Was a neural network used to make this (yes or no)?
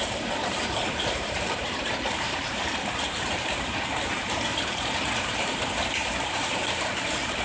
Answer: yes